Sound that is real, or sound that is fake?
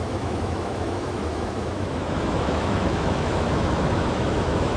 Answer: fake